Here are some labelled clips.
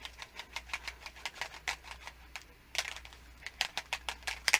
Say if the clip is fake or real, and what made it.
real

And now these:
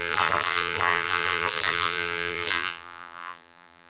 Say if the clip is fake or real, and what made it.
fake, vocoder, BigVGAN v2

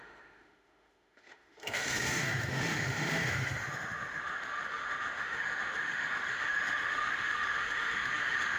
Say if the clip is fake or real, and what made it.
fake, autoencoder, DAC-VAE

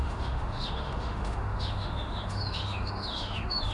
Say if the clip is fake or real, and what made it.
fake, autoencoder, DAC-VAE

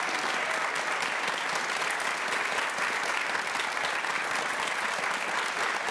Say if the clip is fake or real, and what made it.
real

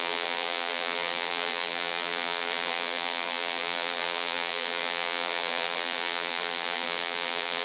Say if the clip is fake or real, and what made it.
fake, vocoder, BigVGAN v2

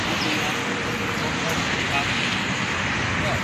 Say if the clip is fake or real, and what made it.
real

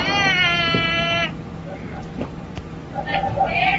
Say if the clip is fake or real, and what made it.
real